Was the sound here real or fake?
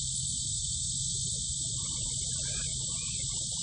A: real